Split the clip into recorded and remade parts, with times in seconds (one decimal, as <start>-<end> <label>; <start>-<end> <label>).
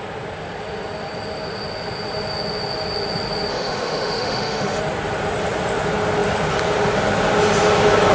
0.0-3.5 recorded; 3.5-4.8 remade; 4.8-8.1 recorded